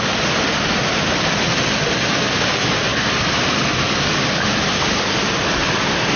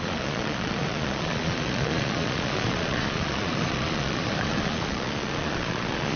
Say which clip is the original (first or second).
first